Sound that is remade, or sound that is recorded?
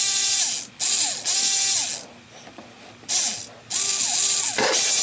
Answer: recorded